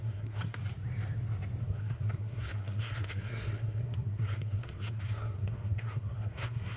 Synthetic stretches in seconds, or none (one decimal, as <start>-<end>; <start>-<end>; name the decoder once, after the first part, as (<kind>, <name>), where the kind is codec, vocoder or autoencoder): 0.0-0.6 (codec, SNAC); 1.6-6.8

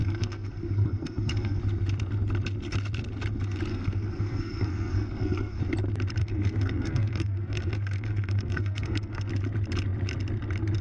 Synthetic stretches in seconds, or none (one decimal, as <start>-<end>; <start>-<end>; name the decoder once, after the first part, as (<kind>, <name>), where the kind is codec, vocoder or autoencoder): 0.0-1.6 (codec, SNAC); 3.7-5.6; 6.2-9.3

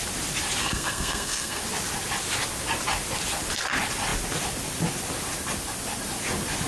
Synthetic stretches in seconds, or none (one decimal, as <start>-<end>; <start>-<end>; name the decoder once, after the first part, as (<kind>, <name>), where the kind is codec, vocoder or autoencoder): 0.6-1.6 (codec, SNAC)